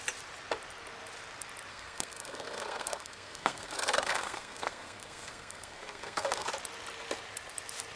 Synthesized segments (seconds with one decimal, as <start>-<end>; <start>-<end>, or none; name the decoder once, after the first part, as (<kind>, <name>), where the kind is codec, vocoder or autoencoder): 1.7-6.5 (codec, SNAC)